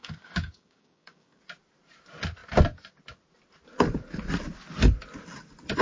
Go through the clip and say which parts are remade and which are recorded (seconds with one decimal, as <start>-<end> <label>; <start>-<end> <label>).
0.0-1.4 remade; 1.4-5.8 recorded